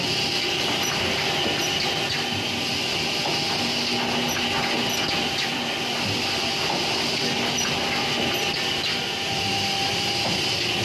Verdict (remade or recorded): recorded